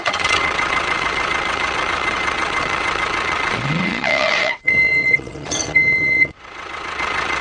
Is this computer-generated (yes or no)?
yes